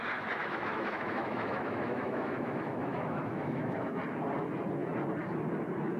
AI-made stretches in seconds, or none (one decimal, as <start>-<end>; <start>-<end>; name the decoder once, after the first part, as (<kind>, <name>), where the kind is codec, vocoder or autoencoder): 0.4-4.0 (autoencoder, DAC-VAE)

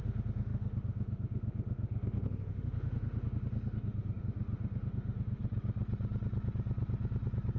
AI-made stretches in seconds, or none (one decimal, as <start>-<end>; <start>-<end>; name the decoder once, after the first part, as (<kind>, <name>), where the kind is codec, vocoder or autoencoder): 0.0-5.4 (autoencoder, DAC-VAE)

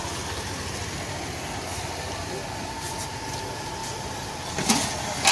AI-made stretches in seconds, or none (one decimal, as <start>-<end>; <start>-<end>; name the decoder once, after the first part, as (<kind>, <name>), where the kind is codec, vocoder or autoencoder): none

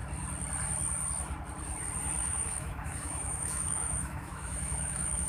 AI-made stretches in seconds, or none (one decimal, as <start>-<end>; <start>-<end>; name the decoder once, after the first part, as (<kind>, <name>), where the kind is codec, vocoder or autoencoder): 2.2-5.3 (autoencoder, DAC-VAE)

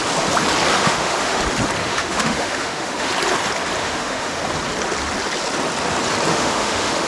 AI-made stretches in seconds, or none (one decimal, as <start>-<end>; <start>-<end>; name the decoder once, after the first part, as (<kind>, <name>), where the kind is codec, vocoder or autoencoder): 0.7-1.4 (autoencoder, DAC-VAE); 1.8-3.1; 3.8-4.4; 6.3-7.1

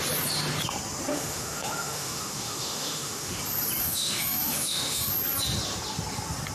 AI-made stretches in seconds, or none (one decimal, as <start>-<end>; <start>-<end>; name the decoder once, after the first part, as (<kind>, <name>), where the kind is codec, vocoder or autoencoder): 1.1-3.4 (autoencoder, DAC-VAE); 3.8-5.1